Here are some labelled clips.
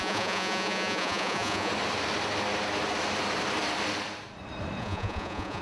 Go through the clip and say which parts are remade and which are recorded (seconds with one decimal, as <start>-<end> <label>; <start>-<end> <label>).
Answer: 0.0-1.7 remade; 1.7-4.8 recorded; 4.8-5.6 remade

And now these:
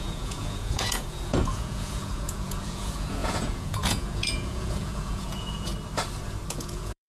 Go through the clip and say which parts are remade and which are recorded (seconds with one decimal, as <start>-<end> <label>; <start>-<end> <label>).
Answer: 0.0-5.7 remade; 5.7-6.5 recorded; 6.5-7.1 remade

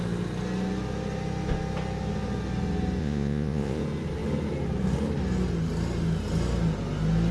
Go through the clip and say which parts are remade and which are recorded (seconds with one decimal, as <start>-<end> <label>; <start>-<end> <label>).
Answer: 0.0-3.0 recorded; 3.0-3.8 remade; 3.8-7.3 recorded

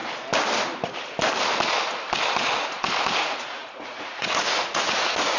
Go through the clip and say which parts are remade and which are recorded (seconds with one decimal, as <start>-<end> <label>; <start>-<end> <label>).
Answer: 0.0-3.2 recorded; 3.2-5.4 remade

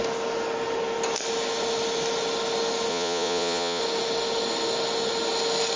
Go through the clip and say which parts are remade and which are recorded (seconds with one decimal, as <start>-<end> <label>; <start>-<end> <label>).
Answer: 0.0-2.9 recorded; 2.9-3.8 remade; 3.8-5.8 recorded

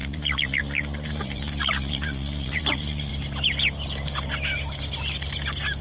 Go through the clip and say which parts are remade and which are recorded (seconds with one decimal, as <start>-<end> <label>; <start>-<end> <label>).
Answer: 0.0-3.1 remade; 3.1-5.8 recorded

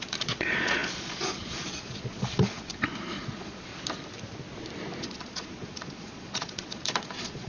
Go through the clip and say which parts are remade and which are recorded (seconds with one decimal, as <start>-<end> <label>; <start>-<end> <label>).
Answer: 0.0-3.7 remade; 3.7-5.0 recorded; 5.0-7.5 remade